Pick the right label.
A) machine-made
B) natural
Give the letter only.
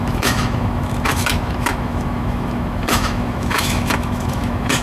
A